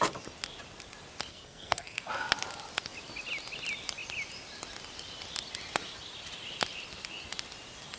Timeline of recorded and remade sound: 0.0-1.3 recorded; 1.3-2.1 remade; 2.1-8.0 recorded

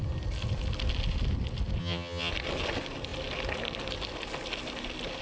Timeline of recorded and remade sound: 0.0-1.8 recorded; 1.8-2.3 remade; 2.3-5.2 recorded

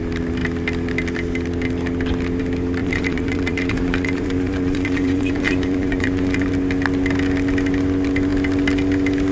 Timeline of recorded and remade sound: 0.0-2.8 recorded; 2.8-6.5 remade; 6.5-9.3 recorded